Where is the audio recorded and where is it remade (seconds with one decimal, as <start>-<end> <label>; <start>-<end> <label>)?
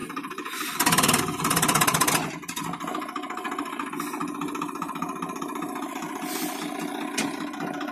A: 0.0-1.2 remade; 1.2-4.2 recorded; 4.2-5.4 remade; 5.4-7.9 recorded